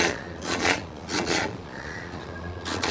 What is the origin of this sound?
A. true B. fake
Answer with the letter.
B